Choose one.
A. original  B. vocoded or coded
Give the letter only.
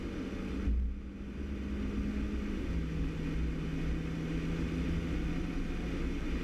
A